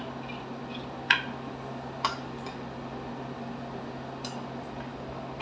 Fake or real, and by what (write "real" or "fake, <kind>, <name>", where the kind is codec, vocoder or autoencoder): real